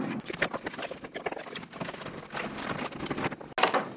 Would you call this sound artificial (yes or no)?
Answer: no